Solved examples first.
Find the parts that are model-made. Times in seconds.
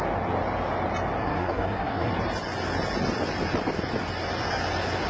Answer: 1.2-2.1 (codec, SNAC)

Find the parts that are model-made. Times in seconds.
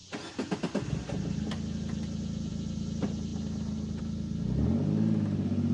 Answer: none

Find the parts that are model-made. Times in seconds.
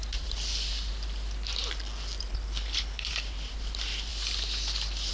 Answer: 2.3-3.1 (codec, HILCodec)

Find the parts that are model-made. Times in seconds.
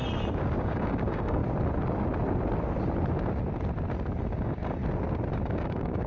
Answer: 0.6-1.4 (codec, DAC); 4.2-4.8; 5.3-6.1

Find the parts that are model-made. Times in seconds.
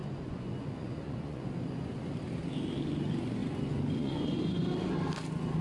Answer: 0.0-1.5 (vocoder, Vocos); 3.4-4.6